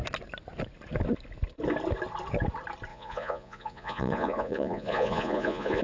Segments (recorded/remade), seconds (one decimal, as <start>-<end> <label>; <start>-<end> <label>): 0.0-2.9 recorded; 2.9-5.8 remade